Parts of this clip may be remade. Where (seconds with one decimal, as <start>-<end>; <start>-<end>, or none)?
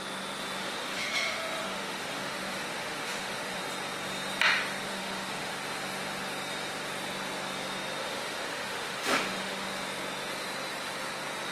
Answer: 0.6-3.6; 4.8-5.5; 8.0-9.7